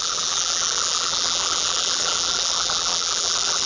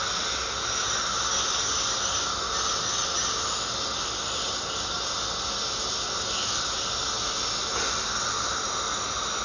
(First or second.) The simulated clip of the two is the first